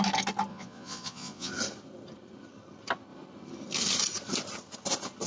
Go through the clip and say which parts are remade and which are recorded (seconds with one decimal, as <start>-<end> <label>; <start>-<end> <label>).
0.0-0.5 recorded; 0.5-1.5 remade; 1.5-5.3 recorded